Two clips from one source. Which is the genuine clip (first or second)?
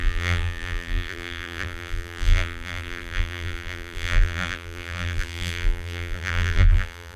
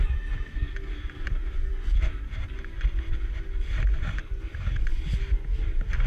second